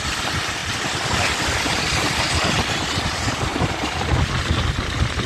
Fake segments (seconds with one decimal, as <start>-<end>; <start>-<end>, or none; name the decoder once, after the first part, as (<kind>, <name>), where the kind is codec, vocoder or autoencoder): 0.6-2.3 (vocoder, BigVGAN v2); 3.5-4.6